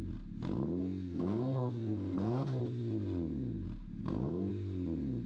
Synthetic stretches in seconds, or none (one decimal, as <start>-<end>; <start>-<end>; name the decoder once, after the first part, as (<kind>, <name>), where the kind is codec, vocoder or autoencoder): 0.8-2.6 (codec, SNAC); 4.0-4.5